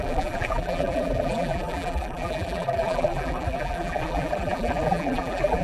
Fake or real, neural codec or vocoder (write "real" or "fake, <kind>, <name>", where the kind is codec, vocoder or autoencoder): fake, vocoder, BigVGAN v2